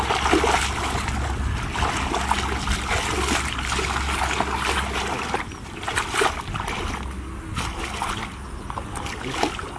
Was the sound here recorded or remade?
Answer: recorded